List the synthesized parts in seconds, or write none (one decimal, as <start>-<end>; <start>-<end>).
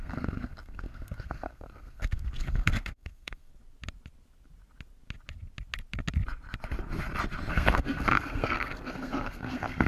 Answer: 0.0-3.5; 7.5-9.9